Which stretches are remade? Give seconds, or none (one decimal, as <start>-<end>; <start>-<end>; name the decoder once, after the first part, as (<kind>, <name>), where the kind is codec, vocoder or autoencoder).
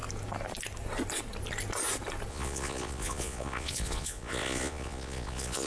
2.3-5.7 (vocoder, Vocos)